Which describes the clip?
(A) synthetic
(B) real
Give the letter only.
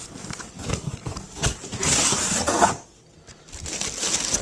B